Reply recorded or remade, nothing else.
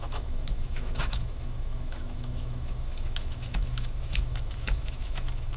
remade